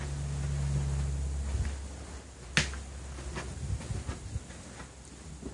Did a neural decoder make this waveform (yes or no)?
no